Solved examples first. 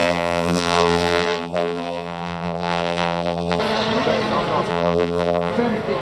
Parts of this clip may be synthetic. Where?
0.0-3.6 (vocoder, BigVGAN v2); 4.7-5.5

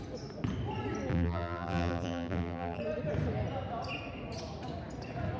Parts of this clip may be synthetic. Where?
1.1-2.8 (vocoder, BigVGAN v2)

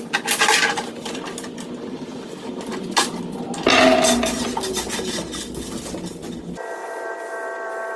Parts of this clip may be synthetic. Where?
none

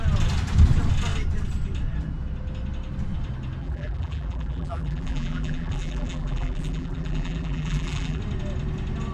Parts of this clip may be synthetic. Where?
3.6-8.2 (vocoder, BigVGAN v2)